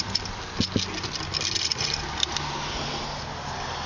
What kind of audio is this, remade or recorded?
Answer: recorded